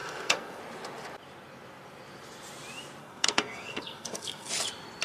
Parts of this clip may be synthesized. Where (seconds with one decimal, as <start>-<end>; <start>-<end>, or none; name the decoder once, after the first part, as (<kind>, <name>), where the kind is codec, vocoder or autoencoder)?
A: 0.0-0.6 (codec, SNAC); 3.0-4.5